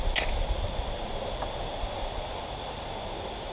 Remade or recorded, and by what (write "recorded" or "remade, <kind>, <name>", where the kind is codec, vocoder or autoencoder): recorded